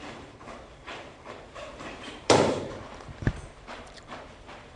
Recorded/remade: remade